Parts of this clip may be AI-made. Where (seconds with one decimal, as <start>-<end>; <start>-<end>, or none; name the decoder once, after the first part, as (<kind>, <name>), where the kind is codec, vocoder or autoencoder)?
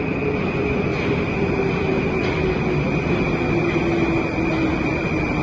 none